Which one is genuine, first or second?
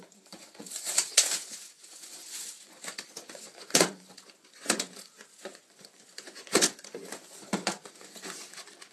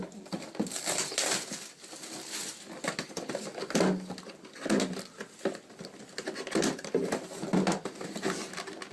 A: second